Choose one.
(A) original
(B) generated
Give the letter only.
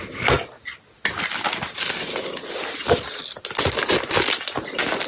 A